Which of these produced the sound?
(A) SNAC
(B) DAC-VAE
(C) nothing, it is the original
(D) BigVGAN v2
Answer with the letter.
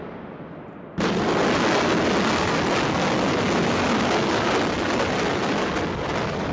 C